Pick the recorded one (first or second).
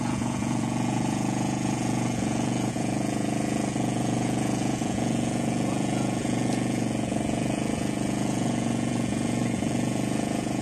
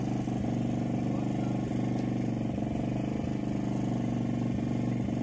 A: second